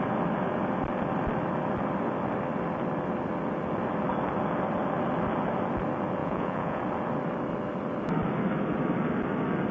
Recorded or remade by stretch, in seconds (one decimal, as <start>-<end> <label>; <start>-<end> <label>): 0.0-6.2 recorded; 6.2-6.8 remade; 6.8-9.7 recorded